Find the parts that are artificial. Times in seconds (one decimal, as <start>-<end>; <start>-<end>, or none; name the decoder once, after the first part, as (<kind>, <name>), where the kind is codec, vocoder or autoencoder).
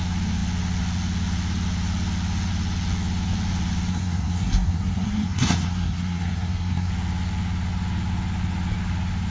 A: 3.9-6.9 (codec, SNAC)